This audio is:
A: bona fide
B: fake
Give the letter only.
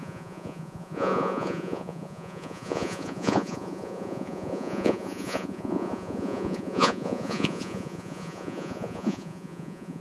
B